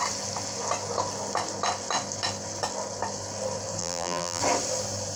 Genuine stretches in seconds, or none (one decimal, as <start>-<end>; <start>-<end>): 0.0-3.8; 4.4-5.2